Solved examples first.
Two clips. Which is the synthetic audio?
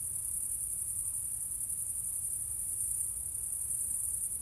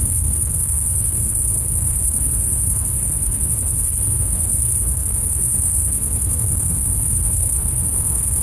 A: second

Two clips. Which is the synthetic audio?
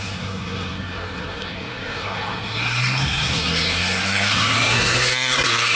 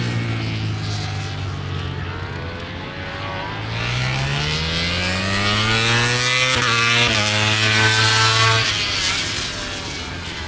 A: first